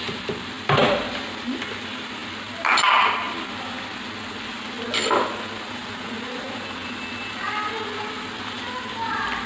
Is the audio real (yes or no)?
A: yes